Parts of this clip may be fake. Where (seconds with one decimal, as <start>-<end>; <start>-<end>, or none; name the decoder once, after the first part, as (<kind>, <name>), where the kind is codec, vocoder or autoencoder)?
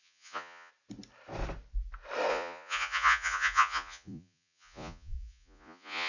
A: 0.0-0.7 (vocoder, Vocos); 2.3-6.1